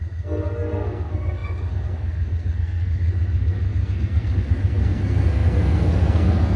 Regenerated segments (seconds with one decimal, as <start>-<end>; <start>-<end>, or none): 0.0-6.6